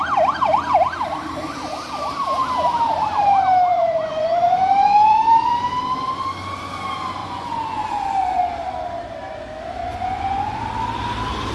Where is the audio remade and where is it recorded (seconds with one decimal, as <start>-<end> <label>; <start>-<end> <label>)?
0.0-3.7 recorded; 3.7-5.5 remade; 5.5-7.2 recorded; 7.2-8.5 remade; 8.5-9.8 recorded; 9.8-10.6 remade; 10.6-11.5 recorded